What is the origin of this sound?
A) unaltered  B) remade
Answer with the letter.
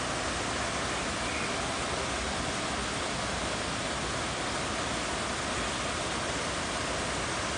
A